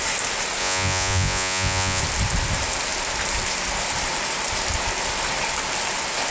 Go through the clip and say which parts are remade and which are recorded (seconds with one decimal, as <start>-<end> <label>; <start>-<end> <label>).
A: 0.0-0.6 recorded; 0.6-2.0 remade; 2.0-6.3 recorded